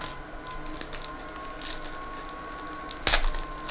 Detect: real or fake real